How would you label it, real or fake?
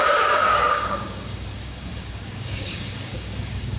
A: fake